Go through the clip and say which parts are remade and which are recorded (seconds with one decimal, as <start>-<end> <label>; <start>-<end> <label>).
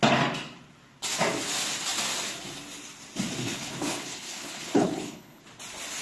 0.0-3.4 recorded; 3.4-5.4 remade; 5.4-6.0 recorded